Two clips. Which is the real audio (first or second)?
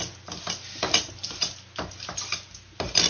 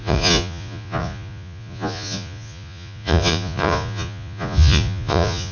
first